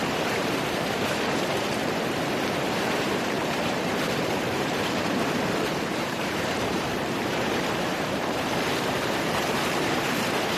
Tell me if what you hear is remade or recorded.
remade